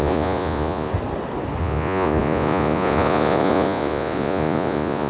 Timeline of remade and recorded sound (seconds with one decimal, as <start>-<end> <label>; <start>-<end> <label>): 0.0-0.9 remade; 0.9-1.6 recorded; 1.6-5.1 remade